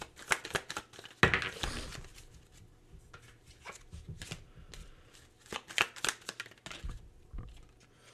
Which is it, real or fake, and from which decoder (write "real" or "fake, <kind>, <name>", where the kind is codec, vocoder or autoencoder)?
real